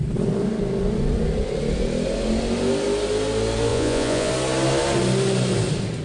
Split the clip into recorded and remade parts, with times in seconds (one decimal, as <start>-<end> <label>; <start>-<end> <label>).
0.0-3.7 recorded; 3.7-4.3 remade; 4.3-6.0 recorded